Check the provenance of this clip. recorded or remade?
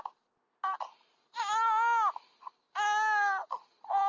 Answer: recorded